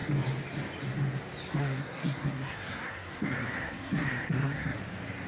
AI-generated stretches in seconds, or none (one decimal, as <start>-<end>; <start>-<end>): 1.6-4.8